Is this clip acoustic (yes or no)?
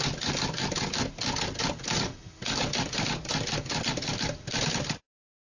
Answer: yes